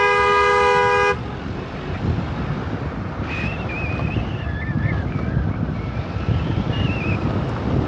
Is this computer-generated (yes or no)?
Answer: no